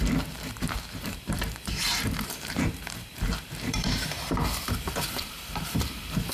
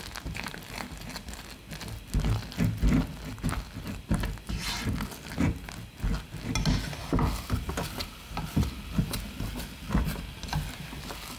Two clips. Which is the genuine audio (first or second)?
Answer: second